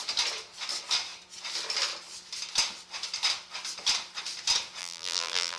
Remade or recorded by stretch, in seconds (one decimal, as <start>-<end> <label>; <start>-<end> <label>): 0.0-4.8 recorded; 4.8-5.6 remade